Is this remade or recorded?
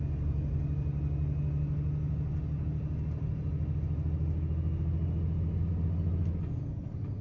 recorded